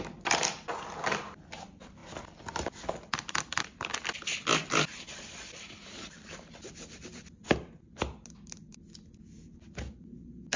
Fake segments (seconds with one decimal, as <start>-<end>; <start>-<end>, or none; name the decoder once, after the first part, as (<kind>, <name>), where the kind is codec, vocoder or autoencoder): none